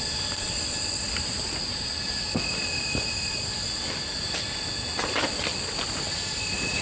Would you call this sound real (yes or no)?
yes